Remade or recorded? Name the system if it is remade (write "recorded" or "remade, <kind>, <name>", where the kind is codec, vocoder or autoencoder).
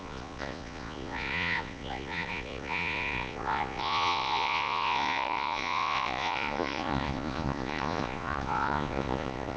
remade, vocoder, Vocos